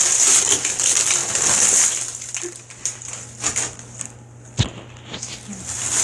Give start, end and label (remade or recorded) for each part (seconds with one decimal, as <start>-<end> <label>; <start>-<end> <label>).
0.0-6.0 recorded